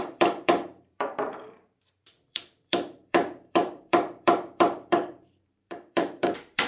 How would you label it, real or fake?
fake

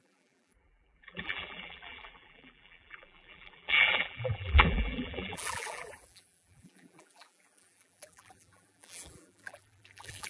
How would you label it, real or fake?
fake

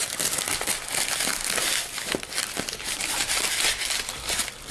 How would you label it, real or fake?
real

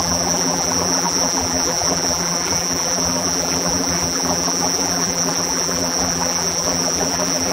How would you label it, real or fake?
fake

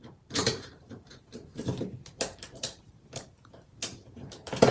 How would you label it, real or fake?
fake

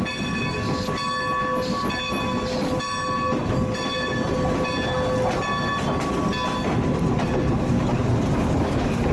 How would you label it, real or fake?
real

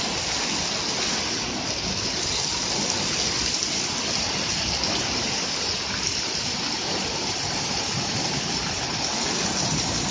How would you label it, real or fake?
real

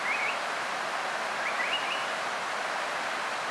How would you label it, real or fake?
real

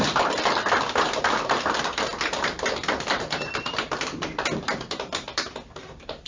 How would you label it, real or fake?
fake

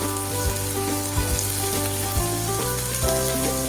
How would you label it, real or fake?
real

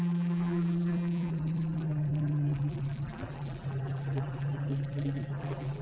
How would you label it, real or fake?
fake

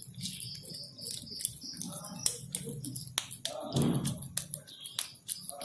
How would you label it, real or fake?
real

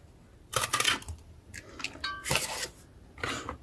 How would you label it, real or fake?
real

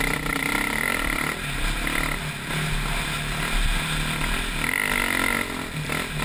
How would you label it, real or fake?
real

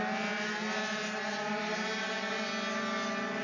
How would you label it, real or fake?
real